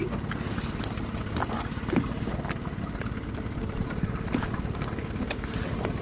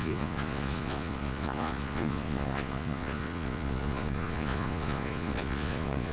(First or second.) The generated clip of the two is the second